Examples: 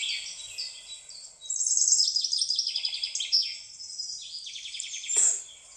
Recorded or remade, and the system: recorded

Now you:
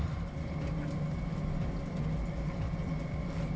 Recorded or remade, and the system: recorded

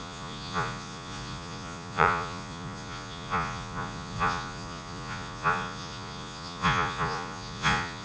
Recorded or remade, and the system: remade, vocoder, Vocos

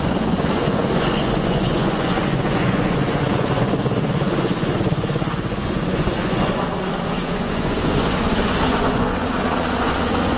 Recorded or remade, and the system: remade, vocoder, Vocos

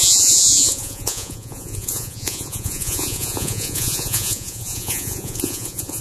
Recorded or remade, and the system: remade, vocoder, Vocos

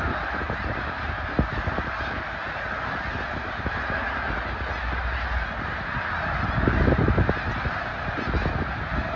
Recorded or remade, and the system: recorded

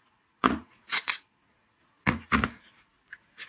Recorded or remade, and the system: remade, vocoder, Vocos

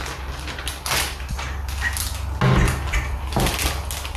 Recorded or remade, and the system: recorded